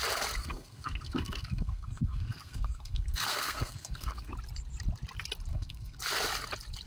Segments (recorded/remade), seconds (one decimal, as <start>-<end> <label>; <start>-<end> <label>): 0.0-0.4 recorded; 0.4-4.3 remade; 4.3-5.5 recorded; 5.5-6.0 remade; 6.0-6.9 recorded